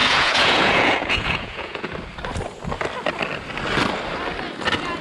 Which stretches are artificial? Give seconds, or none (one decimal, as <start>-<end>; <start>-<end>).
0.0-1.9